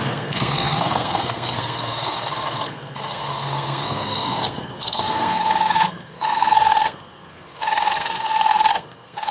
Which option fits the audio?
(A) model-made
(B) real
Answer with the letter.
A